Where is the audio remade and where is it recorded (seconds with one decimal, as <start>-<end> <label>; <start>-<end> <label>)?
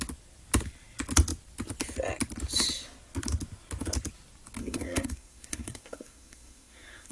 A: 0.0-4.6 recorded; 4.6-7.1 remade